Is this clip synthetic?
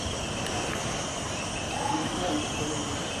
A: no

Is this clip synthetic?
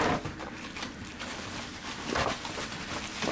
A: no